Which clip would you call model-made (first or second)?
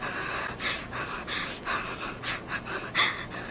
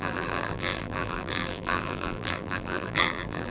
second